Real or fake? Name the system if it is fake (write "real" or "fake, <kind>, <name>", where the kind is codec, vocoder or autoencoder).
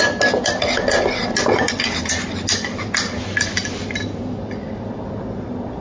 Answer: real